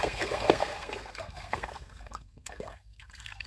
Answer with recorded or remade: remade